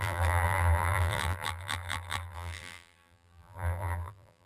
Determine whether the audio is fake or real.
fake